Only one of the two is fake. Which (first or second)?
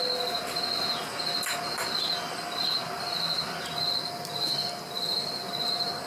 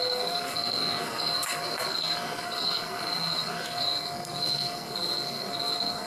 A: second